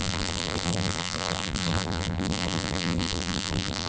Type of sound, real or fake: fake